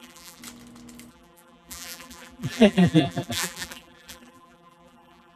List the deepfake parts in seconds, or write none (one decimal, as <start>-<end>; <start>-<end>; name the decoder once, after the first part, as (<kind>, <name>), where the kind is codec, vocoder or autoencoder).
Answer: 0.0-0.4 (vocoder, BigVGAN v2); 1.1-5.4